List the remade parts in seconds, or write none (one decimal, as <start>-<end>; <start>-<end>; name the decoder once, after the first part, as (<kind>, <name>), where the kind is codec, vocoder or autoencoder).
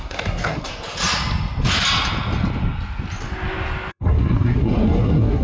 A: 0.0-0.7 (codec, SNAC); 3.9-5.4